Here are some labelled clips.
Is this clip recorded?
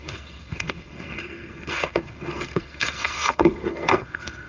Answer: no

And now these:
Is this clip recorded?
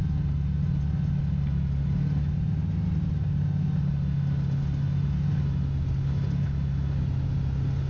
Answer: yes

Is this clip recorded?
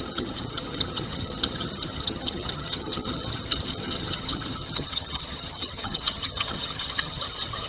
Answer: no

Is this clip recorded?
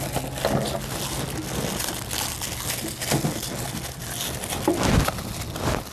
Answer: yes